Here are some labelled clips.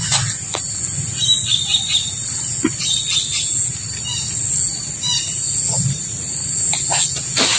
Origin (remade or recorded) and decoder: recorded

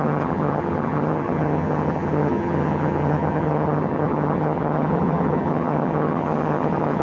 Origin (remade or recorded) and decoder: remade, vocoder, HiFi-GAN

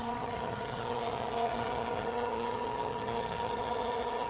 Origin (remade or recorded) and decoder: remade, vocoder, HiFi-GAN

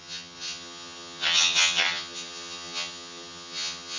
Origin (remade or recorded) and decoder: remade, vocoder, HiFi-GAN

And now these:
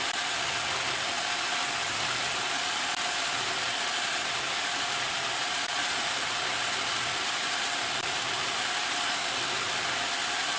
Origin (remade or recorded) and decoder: recorded